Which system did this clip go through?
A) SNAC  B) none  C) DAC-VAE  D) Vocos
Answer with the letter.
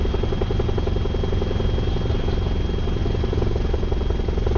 B